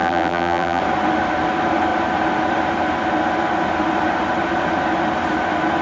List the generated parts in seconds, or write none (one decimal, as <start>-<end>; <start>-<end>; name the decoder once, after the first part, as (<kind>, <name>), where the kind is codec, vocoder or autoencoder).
0.0-0.8 (vocoder, BigVGAN v2)